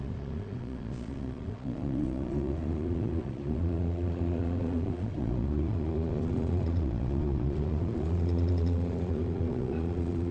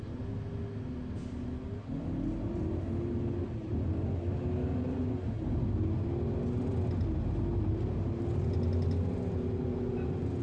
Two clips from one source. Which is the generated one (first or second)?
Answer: first